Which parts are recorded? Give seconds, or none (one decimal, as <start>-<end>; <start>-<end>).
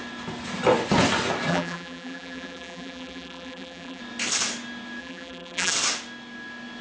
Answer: 0.0-1.5; 4.0-5.0; 5.7-6.8